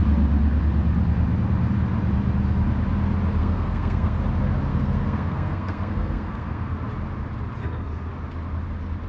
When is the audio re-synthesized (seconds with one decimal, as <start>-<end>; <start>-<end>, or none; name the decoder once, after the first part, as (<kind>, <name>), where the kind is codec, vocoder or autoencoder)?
3.4-4.2 (codec, SNAC); 4.7-6.8; 7.6-8.1

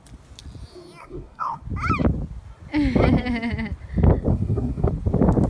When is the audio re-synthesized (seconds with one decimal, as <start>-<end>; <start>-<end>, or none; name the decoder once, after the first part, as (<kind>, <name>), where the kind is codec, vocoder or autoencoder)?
1.0-1.6 (codec, SNAC); 4.3-4.9

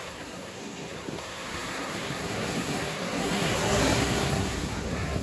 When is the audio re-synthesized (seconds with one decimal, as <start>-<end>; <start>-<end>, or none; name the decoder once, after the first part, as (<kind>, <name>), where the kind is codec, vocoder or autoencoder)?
0.0-5.2 (codec, SNAC)

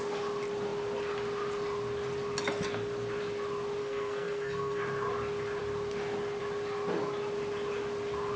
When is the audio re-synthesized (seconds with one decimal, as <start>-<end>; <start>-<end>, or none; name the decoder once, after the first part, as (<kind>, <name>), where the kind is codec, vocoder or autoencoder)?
3.8-4.8 (codec, SNAC)

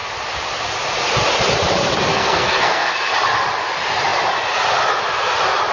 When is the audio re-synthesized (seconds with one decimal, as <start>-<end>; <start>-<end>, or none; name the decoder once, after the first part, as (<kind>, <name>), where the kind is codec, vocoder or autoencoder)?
2.1-2.9 (codec, SNAC)

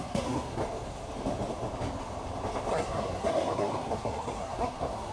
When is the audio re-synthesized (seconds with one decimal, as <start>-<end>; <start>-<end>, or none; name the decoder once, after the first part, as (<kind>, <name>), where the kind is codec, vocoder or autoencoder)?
0.0-0.6 (codec, SNAC); 2.7-5.1

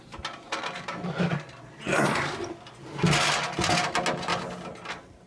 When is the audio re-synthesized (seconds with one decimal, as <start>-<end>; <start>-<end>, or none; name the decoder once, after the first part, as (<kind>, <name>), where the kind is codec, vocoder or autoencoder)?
none

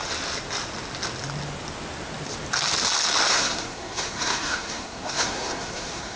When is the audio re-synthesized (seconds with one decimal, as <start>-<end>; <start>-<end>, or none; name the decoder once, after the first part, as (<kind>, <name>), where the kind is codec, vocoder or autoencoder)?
3.3-6.2 (codec, SNAC)